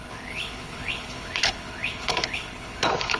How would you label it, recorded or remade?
remade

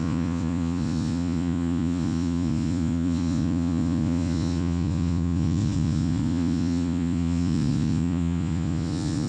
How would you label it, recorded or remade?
remade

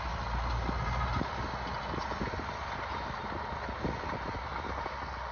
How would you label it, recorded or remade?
recorded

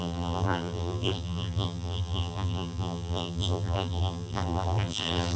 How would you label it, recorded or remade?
remade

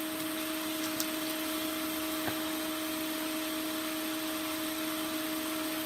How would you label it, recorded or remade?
remade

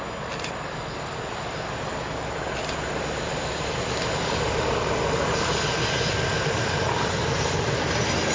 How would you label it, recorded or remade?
remade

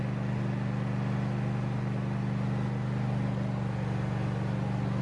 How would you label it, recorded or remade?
recorded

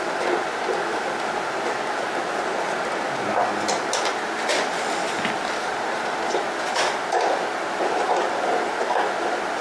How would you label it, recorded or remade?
recorded